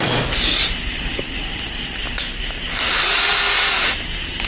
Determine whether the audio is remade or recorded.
recorded